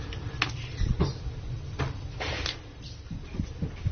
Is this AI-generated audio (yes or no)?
yes